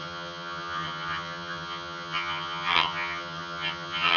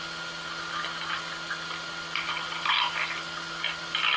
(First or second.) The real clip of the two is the second